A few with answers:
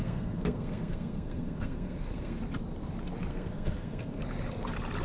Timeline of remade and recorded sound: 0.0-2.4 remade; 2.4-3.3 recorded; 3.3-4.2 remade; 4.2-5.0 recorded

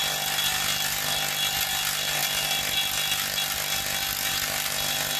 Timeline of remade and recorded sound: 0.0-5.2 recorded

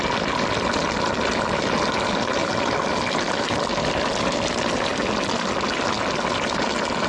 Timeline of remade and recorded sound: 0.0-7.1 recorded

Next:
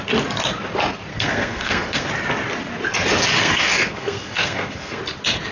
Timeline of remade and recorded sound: 0.0-1.1 recorded; 1.1-2.1 remade; 2.1-3.4 recorded; 3.4-5.0 remade; 5.0-5.5 recorded

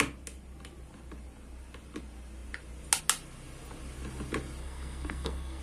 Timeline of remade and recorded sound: 0.0-4.6 recorded; 4.6-5.6 remade

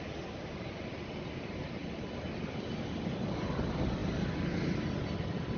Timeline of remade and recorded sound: 0.0-5.6 recorded

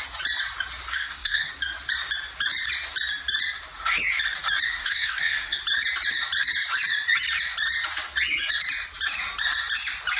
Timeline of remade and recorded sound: 0.0-0.9 recorded; 0.9-1.5 remade; 1.5-4.8 recorded; 4.8-5.6 remade; 5.6-10.2 recorded